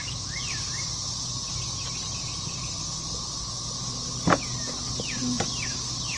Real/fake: real